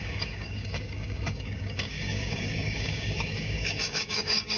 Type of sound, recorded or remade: remade